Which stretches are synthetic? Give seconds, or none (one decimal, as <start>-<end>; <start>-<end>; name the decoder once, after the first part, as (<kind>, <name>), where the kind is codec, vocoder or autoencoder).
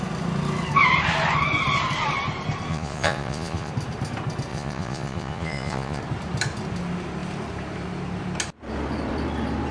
2.7-3.7 (vocoder, Vocos); 4.5-6.0